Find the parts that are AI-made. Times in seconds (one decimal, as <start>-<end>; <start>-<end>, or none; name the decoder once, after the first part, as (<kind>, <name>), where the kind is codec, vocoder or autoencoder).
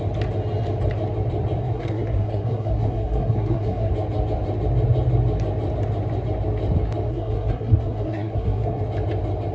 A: 1.6-3.9 (codec, SNAC); 7.1-8.8